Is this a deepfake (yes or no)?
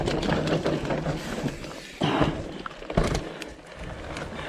no